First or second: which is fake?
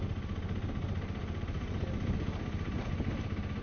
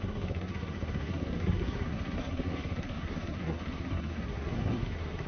second